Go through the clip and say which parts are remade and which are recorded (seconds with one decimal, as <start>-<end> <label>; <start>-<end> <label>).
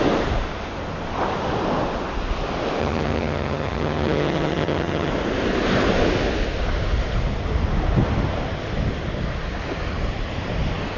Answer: 0.0-2.8 recorded; 2.8-5.1 remade; 5.1-11.0 recorded